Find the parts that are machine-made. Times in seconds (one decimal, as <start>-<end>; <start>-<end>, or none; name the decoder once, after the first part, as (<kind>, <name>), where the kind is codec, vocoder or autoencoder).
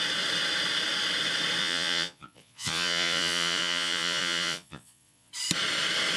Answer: 1.6-5.3 (vocoder, Vocos)